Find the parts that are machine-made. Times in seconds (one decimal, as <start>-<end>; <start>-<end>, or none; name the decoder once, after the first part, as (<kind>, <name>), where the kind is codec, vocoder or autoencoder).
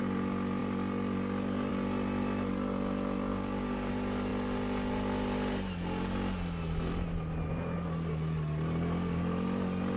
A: 3.3-3.9 (codec, DAC)